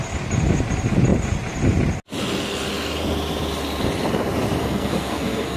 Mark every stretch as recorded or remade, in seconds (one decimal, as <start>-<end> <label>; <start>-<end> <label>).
0.0-4.6 recorded; 4.6-5.6 remade